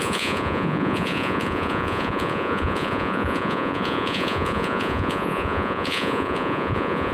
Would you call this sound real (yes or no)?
no